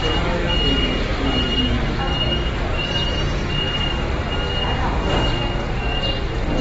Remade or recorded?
recorded